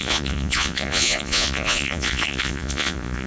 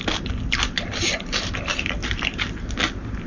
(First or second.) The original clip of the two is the second